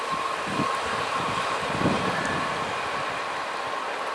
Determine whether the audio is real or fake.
real